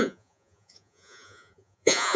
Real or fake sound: fake